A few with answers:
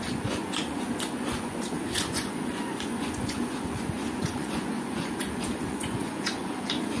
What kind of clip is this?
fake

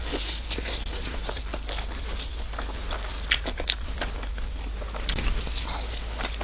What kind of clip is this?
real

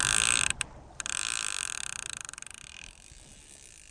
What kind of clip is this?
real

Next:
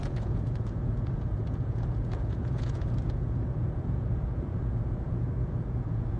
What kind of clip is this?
fake